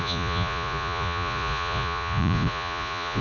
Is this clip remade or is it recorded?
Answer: remade